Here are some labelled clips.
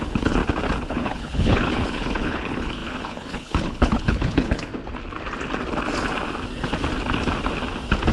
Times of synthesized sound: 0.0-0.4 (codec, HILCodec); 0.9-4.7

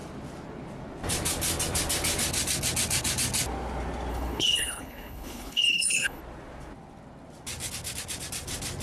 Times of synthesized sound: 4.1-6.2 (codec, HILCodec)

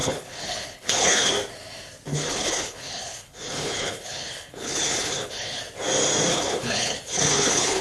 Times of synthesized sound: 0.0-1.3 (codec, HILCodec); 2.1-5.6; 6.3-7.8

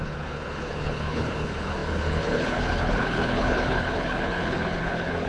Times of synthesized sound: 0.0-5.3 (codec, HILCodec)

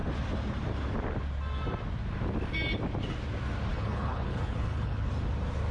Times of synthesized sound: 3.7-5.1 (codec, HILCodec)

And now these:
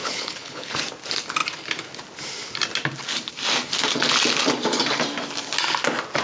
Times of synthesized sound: 0.0-0.8 (codec, HILCodec)